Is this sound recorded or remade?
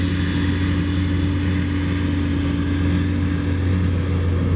recorded